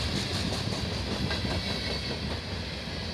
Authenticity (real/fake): real